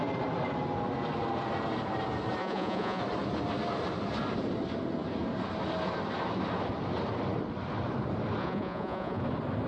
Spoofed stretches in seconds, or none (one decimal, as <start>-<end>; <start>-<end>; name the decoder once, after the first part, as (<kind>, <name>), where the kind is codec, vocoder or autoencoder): 2.4-3.0 (vocoder, Vocos); 8.4-9.2